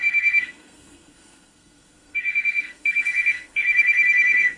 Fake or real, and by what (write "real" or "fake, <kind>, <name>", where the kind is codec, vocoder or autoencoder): fake, codec, SNAC